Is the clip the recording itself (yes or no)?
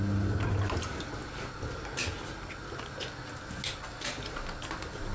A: yes